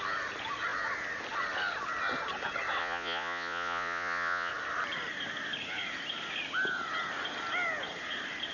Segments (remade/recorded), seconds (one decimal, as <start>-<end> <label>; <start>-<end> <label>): 0.0-2.8 recorded; 2.8-4.5 remade; 4.5-8.5 recorded